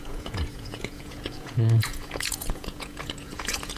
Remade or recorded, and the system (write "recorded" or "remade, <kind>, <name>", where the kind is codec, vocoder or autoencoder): remade, vocoder, Vocos